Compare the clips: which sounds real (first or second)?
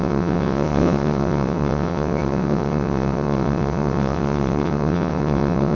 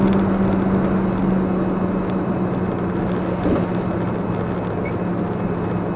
second